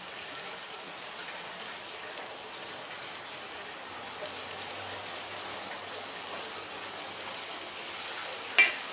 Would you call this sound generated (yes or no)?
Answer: no